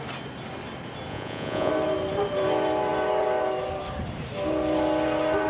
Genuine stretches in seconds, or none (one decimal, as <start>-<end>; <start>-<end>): 0.0-1.1; 1.7-5.5